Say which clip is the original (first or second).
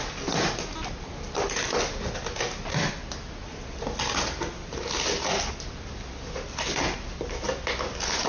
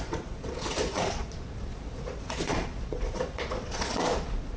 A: first